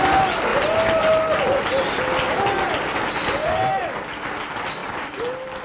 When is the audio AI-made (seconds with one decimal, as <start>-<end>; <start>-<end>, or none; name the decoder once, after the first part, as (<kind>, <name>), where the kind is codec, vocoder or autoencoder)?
none